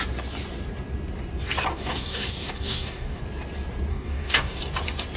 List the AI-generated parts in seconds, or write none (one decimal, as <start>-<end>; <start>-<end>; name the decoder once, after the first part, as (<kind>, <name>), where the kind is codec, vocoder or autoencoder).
1.7-3.2 (codec, DAC); 3.9-4.6